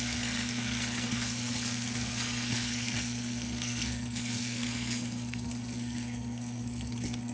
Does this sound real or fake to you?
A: fake